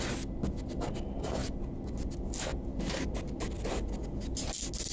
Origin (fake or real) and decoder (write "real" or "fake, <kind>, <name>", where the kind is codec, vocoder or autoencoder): real